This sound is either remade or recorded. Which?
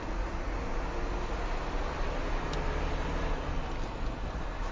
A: recorded